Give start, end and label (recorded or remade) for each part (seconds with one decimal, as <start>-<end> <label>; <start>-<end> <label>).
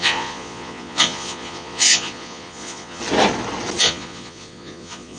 0.0-3.0 remade; 3.0-3.8 recorded; 3.8-5.2 remade